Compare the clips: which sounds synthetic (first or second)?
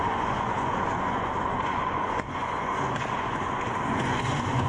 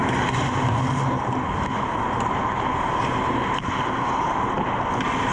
first